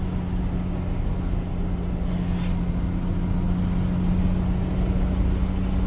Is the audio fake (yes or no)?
no